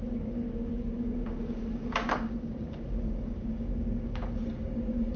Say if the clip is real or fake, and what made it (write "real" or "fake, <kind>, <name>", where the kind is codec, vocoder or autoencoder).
fake, codec, DAC